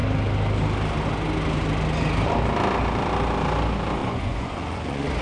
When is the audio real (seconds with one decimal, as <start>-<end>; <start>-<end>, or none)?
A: 0.0-4.0